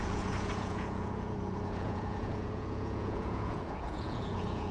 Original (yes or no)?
no